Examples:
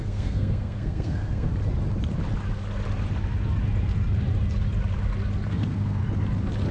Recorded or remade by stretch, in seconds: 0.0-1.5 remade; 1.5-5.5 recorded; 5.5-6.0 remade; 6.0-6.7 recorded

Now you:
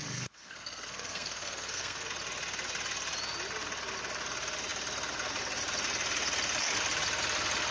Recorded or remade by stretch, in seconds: 0.0-2.1 remade; 2.1-7.7 recorded